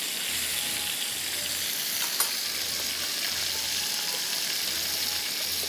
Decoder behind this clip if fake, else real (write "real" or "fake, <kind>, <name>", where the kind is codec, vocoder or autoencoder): real